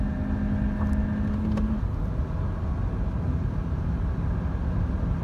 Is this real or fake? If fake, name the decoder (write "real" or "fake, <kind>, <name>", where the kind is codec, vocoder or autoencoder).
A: real